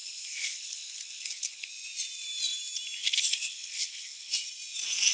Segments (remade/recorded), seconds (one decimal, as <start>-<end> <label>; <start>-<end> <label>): 0.0-1.7 remade; 1.7-3.0 recorded; 3.0-4.3 remade; 4.3-5.1 recorded